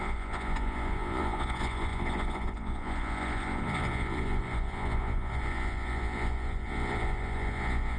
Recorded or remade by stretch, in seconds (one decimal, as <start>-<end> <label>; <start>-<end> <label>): 0.0-8.0 remade

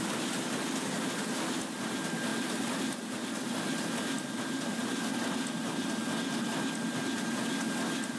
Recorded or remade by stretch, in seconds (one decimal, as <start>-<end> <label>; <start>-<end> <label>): 0.0-8.2 recorded